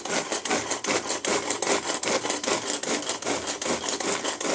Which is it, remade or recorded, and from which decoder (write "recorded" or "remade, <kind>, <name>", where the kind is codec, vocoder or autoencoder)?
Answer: recorded